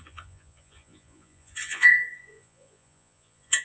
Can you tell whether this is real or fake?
fake